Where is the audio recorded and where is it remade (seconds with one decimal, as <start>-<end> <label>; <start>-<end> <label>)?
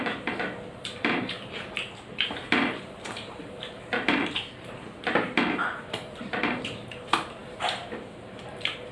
0.0-8.9 remade